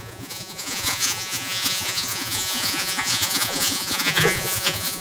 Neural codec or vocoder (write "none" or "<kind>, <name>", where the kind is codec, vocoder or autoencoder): vocoder, Vocos